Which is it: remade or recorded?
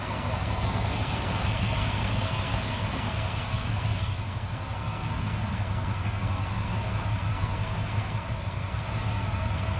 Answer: remade